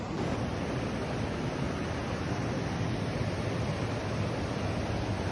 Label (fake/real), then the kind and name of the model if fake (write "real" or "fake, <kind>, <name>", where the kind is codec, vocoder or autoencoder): real